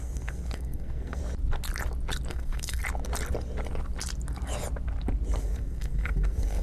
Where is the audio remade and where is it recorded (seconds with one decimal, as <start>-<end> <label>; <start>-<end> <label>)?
0.0-1.2 remade; 1.2-2.3 recorded; 2.3-2.8 remade; 2.8-5.4 recorded; 5.4-6.6 remade